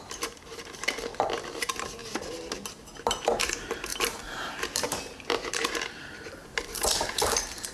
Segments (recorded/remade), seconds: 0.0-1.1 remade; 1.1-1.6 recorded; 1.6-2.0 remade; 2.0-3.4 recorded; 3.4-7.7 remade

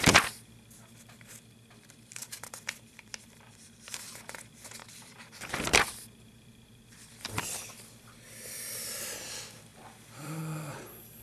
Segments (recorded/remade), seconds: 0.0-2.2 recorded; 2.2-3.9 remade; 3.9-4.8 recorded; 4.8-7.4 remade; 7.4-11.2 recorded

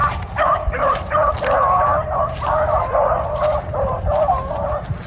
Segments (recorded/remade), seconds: 0.0-1.3 remade; 1.3-1.9 recorded; 1.9-5.1 remade